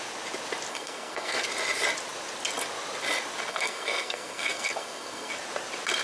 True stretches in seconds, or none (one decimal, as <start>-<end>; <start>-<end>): 0.0-0.7; 1.4-3.5; 5.3-6.0